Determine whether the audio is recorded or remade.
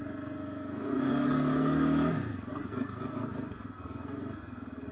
remade